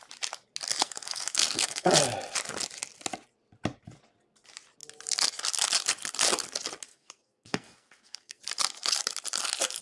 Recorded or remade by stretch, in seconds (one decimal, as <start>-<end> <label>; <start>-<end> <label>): 0.0-0.8 recorded; 0.8-1.9 remade; 1.9-6.9 recorded; 6.9-8.4 remade; 8.4-9.8 recorded